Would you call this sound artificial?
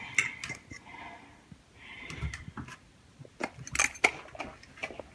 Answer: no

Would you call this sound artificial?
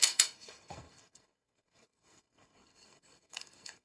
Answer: yes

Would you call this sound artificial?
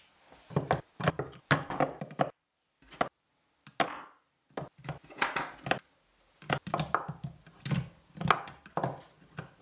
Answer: no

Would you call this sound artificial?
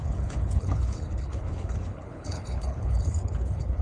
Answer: yes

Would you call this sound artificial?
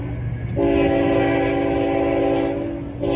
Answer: no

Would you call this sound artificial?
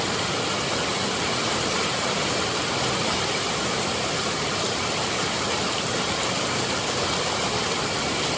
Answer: no